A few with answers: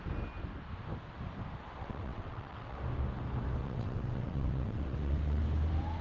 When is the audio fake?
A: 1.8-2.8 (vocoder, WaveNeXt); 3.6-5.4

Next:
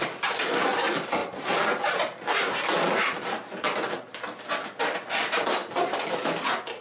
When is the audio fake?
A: none

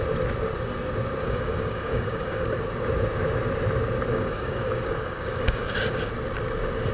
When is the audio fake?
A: 1.2-2.6 (codec, DAC); 4.1-6.1